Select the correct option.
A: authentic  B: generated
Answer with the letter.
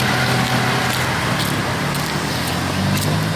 A